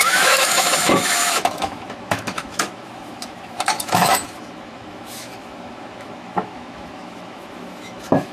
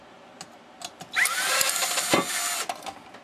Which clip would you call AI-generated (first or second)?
first